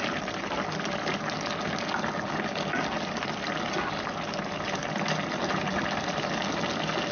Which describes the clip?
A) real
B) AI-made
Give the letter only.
A